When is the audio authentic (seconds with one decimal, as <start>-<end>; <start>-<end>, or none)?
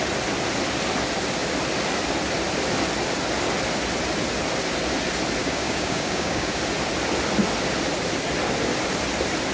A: 0.0-5.4; 6.6-9.5